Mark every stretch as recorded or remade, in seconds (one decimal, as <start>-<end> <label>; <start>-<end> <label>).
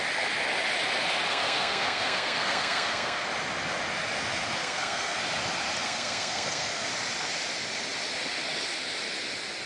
0.0-1.3 recorded; 1.3-3.3 remade; 3.3-4.6 recorded; 4.6-5.2 remade; 5.2-5.8 recorded; 5.8-6.9 remade; 6.9-9.7 recorded